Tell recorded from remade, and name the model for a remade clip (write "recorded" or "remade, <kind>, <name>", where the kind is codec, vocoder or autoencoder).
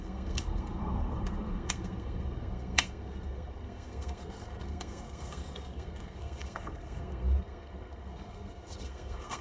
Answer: remade, codec, SNAC